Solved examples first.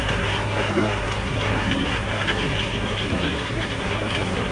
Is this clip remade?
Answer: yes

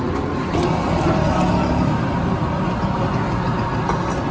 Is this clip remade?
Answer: no